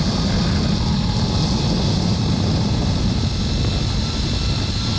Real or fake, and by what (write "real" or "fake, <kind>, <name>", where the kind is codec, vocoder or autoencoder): real